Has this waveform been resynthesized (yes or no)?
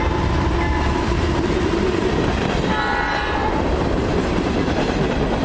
yes